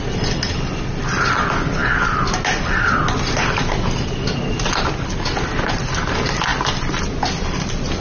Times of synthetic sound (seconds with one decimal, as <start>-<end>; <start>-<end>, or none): none